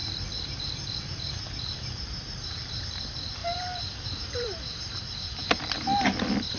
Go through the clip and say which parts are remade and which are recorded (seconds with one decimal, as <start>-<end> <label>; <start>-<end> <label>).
0.0-2.8 remade; 2.8-3.4 recorded; 3.4-5.0 remade; 5.0-5.4 recorded; 5.4-6.0 remade; 6.0-6.6 recorded